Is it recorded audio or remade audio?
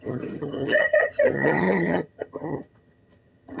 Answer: remade